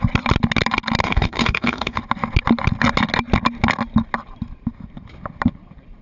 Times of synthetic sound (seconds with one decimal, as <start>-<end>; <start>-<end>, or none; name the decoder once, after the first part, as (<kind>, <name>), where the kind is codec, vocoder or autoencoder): 1.0-2.0 (autoencoder, DAC-VAE)